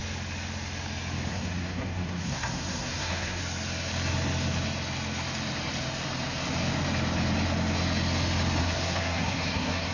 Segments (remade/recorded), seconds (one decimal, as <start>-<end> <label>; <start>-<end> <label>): 0.0-1.3 recorded; 1.3-3.4 remade; 3.4-8.6 recorded; 8.6-9.9 remade